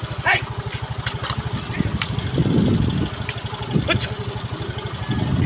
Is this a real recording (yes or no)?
yes